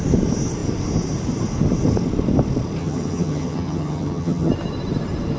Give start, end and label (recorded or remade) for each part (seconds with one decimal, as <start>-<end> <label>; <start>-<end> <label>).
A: 0.0-2.8 recorded; 2.8-4.5 remade; 4.5-5.4 recorded